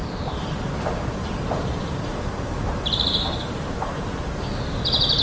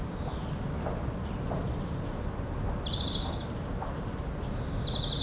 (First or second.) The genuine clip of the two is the second